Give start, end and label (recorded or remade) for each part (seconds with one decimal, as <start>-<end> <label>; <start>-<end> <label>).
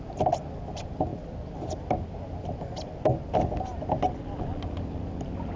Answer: 0.0-5.6 recorded